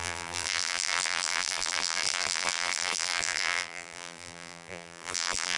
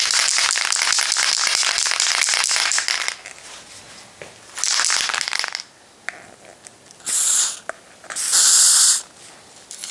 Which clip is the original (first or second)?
second